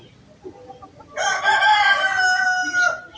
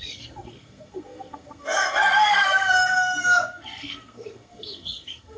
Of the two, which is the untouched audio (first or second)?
first